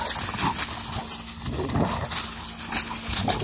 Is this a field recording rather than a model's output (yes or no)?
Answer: yes